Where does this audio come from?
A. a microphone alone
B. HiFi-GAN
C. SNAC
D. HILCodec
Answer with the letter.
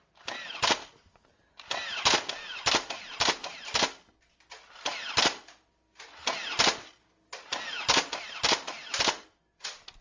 A